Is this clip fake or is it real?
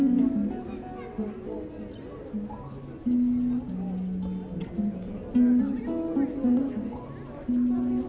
real